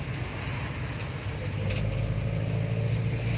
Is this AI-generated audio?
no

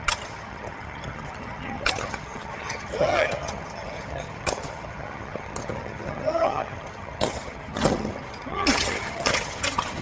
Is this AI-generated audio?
yes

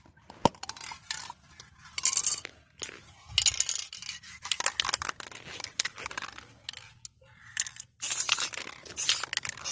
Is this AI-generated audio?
no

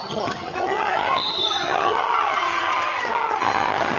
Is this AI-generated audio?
yes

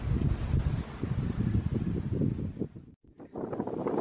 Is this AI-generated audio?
no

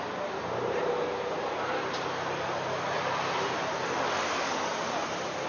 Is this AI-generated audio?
no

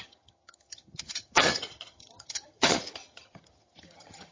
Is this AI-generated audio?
yes